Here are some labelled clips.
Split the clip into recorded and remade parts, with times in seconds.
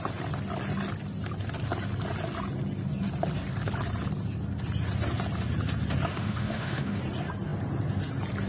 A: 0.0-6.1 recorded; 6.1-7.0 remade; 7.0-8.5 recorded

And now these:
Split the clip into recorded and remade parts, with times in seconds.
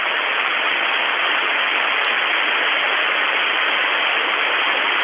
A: 0.0-5.0 recorded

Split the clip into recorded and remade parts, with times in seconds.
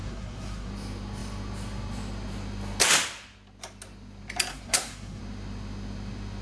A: 0.0-0.7 remade; 0.7-4.5 recorded; 4.5-5.2 remade; 5.2-6.4 recorded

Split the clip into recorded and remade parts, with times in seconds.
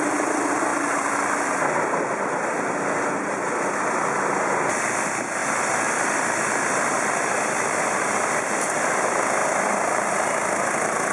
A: 0.0-5.4 recorded; 5.4-9.0 remade; 9.0-11.1 recorded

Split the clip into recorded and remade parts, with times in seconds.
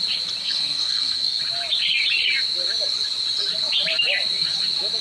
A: 0.0-0.4 recorded; 0.4-1.4 remade; 1.4-5.0 recorded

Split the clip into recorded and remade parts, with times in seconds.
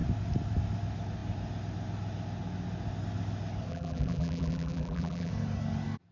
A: 0.0-3.7 recorded; 3.7-5.3 remade; 5.3-6.1 recorded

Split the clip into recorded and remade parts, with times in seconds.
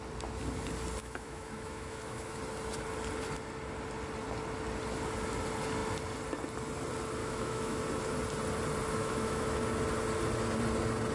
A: 0.0-1.0 recorded; 1.0-2.4 remade; 2.4-7.2 recorded; 7.2-7.8 remade; 7.8-9.0 recorded; 9.0-9.6 remade; 9.6-11.1 recorded